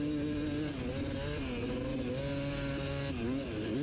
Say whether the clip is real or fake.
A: real